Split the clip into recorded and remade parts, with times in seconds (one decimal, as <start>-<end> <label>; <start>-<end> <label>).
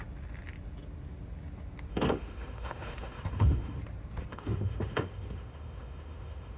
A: 0.0-1.9 recorded; 1.9-3.8 remade; 3.8-4.3 recorded; 4.3-6.6 remade